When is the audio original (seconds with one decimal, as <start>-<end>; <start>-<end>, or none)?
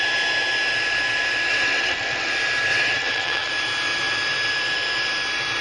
0.0-1.5; 2.3-2.7; 3.5-5.6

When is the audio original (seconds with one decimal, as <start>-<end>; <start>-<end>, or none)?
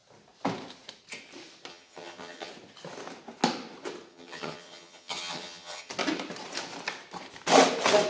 0.0-1.7; 2.5-4.1; 5.9-8.1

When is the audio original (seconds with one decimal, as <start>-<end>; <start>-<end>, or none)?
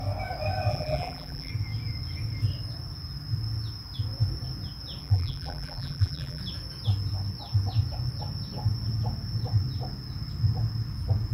0.0-0.7; 1.5-5.0; 6.4-11.3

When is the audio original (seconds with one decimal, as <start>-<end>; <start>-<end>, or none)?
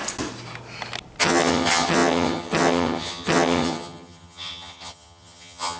0.0-1.2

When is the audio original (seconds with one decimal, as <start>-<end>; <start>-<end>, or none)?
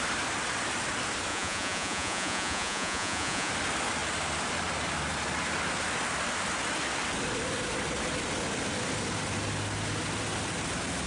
0.0-1.3; 3.5-11.1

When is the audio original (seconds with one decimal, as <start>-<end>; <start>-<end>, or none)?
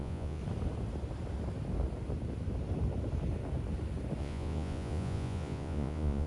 0.4-4.2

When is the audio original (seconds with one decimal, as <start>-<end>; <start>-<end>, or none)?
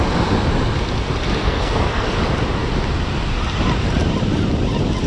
0.0-1.4; 2.2-5.1